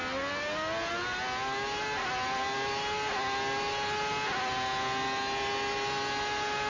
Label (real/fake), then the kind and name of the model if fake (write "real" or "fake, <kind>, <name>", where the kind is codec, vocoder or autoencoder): real